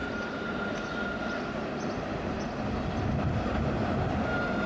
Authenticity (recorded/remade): recorded